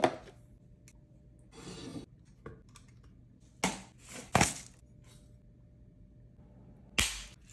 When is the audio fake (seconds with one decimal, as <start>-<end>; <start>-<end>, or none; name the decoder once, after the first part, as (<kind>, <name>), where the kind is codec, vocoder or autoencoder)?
none